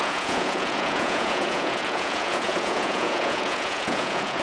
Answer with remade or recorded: remade